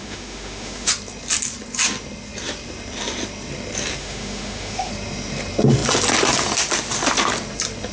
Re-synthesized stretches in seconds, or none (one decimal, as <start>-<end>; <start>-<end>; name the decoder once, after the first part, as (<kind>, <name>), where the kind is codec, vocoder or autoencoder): 0.0-0.9 (autoencoder, DAC-VAE); 4.0-4.9